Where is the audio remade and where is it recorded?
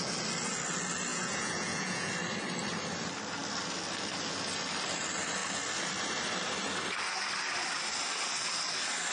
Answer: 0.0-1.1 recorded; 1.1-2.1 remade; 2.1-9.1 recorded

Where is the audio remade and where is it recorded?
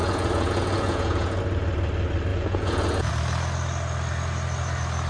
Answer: 0.0-1.4 remade; 1.4-2.3 recorded; 2.3-3.1 remade; 3.1-5.1 recorded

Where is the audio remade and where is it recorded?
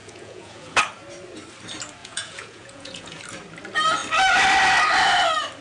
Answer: 0.0-0.8 remade; 0.8-2.0 recorded; 2.0-3.2 remade; 3.2-5.6 recorded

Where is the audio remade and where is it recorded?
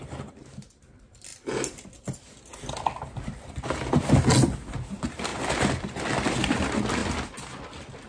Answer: 0.0-8.1 recorded